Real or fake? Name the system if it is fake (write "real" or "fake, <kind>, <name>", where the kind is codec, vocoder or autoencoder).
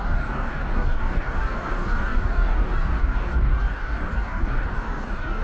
fake, codec, DAC